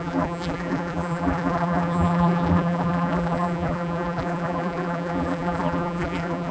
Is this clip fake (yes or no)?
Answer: yes